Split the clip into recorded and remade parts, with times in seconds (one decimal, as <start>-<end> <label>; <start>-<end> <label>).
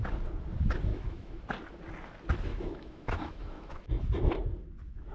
0.0-0.9 recorded; 0.9-1.4 remade; 1.4-2.5 recorded; 2.5-3.9 remade; 3.9-5.1 recorded